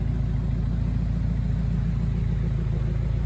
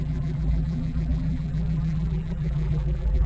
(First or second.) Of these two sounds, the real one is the first